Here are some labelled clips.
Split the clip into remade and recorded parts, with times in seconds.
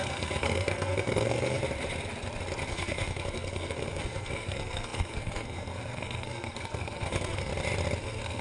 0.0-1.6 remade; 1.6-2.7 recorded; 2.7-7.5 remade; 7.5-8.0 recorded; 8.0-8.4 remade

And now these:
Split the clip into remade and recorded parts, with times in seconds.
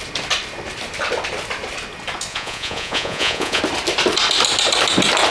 0.0-2.3 recorded; 2.3-3.6 remade; 3.6-5.3 recorded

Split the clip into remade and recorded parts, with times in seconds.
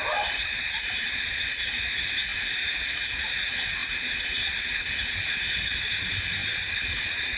0.0-7.4 recorded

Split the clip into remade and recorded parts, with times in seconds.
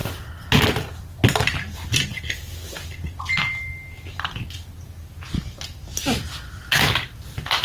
0.0-7.6 recorded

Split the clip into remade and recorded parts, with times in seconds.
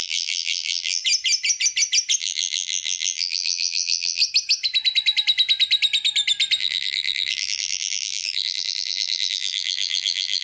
0.0-1.0 remade; 1.0-2.2 recorded; 2.2-4.2 remade; 4.2-6.6 recorded; 6.6-10.4 remade